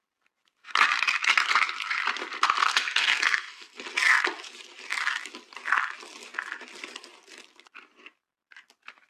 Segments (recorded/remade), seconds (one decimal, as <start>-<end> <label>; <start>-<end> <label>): 0.0-2.6 recorded; 2.6-3.8 remade; 3.8-9.1 recorded